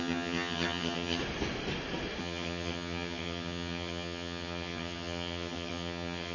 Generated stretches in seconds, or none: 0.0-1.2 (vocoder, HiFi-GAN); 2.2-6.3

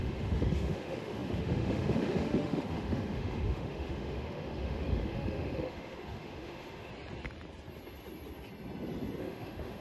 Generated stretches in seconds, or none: 0.0-6.9 (autoencoder, DAC-VAE); 9.2-9.8

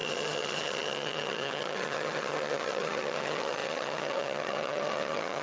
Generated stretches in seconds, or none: 0.0-5.4 (vocoder, HiFi-GAN)

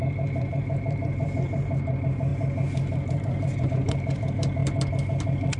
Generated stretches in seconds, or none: 0.0-4.6 (vocoder, BigVGAN v2)

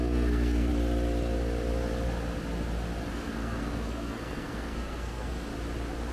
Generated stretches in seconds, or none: 0.0-0.7 (codec, SNAC); 3.1-5.5

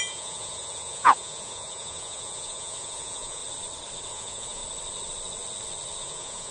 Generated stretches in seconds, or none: 0.0-3.4 (vocoder, Vocos); 4.1-4.6; 6.0-6.5

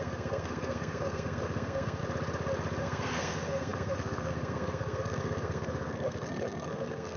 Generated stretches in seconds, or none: 0.0-2.0 (codec, SNAC); 2.8-7.2

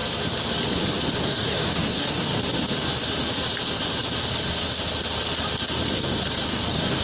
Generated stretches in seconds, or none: 1.2-2.3 (codec, DAC); 6.5-7.0